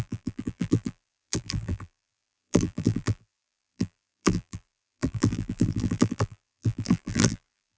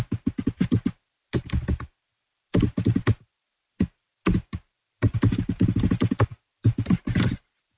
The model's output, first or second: first